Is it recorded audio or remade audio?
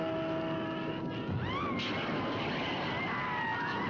recorded